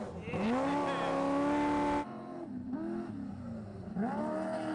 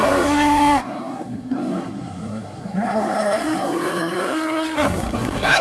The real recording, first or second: first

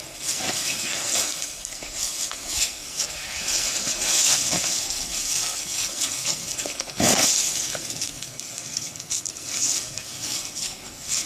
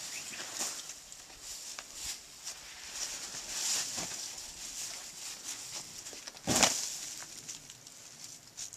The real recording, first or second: second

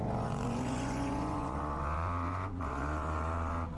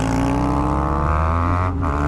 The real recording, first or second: second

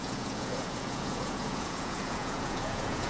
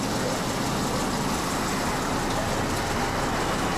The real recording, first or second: second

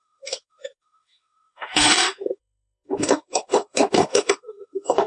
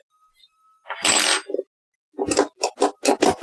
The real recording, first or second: second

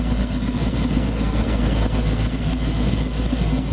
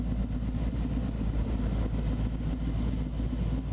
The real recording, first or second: second